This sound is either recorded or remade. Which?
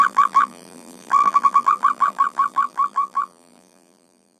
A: remade